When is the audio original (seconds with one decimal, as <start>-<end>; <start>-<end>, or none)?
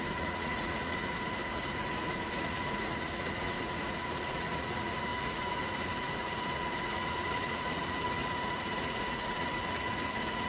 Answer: none